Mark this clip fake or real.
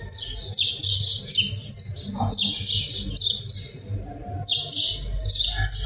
real